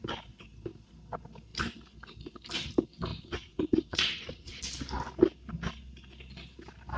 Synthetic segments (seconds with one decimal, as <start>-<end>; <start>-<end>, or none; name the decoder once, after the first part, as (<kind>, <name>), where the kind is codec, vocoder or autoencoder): 3.1-4.6 (vocoder, Vocos)